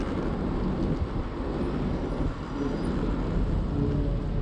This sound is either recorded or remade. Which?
recorded